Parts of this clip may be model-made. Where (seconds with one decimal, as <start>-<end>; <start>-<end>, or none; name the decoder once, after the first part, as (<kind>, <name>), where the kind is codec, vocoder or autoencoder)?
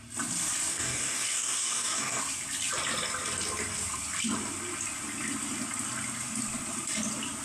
0.7-2.2 (codec, DAC)